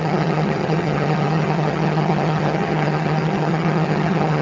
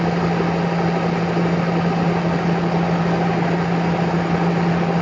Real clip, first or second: second